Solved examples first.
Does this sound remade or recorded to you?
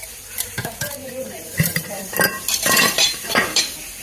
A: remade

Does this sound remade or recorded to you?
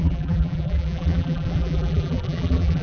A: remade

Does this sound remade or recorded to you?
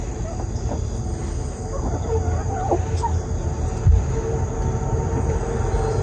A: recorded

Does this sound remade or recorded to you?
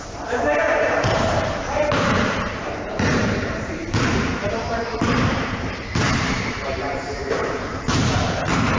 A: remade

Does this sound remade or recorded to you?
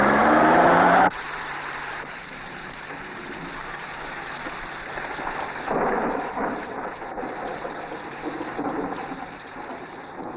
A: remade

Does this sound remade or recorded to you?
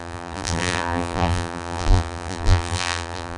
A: remade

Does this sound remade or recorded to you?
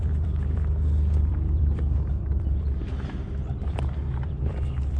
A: remade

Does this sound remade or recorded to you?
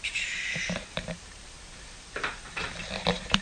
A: remade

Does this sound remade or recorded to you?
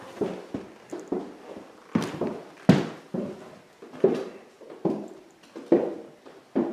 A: recorded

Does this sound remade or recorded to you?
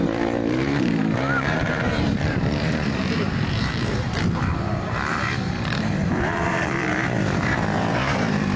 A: remade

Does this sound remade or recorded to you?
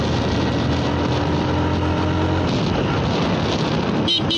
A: recorded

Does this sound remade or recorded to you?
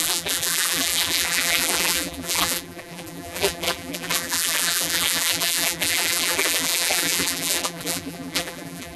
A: remade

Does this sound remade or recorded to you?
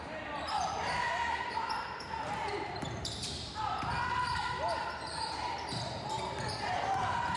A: remade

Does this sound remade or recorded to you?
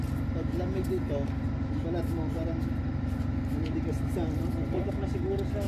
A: recorded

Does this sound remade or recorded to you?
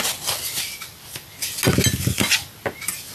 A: recorded